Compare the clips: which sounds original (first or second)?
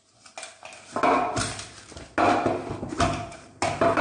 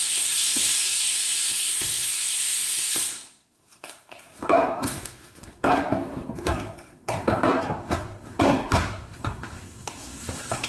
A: first